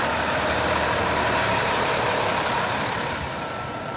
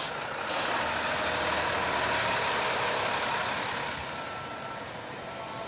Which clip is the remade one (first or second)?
first